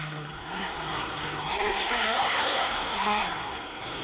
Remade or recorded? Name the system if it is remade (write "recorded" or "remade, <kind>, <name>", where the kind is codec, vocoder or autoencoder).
remade, codec, SNAC